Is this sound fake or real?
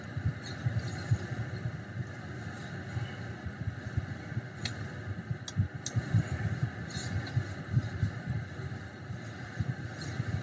real